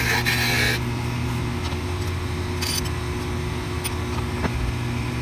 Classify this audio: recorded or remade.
recorded